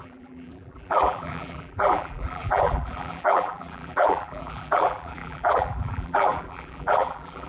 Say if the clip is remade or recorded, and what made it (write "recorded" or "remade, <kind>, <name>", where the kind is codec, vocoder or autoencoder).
remade, vocoder, BigVGAN v2